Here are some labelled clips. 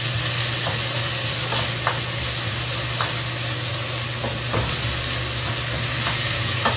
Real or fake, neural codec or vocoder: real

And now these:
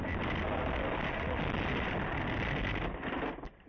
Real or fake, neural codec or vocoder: real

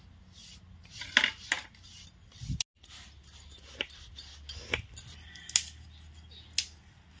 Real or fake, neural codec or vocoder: real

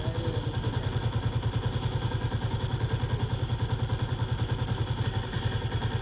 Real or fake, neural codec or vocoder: real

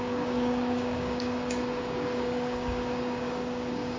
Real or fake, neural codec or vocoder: fake, codec, DAC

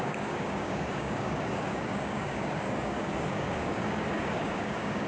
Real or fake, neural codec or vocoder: fake, codec, DAC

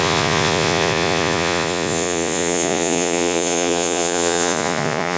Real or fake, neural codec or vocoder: fake, vocoder, Vocos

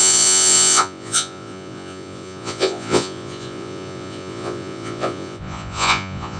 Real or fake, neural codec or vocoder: fake, vocoder, Vocos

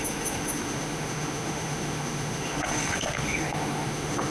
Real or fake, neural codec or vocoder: fake, autoencoder, DAC-VAE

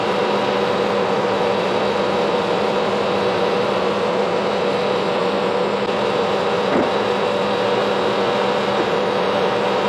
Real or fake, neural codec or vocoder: real